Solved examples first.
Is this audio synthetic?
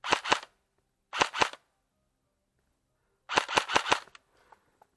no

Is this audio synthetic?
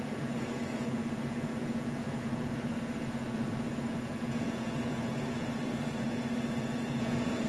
yes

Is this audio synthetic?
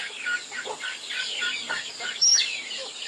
yes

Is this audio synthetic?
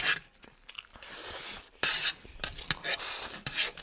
no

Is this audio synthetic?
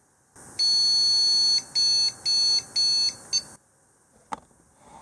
no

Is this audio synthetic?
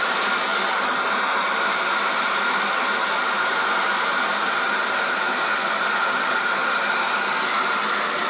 no